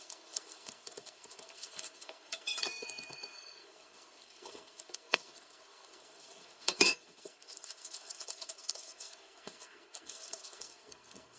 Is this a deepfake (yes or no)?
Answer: yes